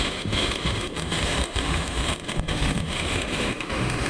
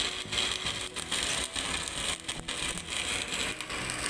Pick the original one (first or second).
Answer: second